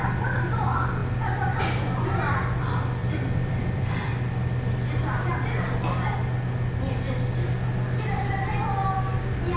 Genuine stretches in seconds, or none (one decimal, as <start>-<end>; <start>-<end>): 0.0-3.0; 4.1-9.6

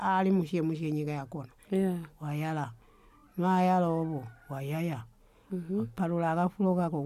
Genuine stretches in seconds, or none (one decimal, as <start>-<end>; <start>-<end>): 0.0-7.1